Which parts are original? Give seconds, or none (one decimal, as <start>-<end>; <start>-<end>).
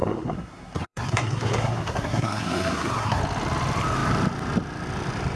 3.2-5.4